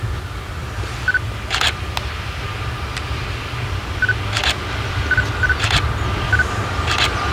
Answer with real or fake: real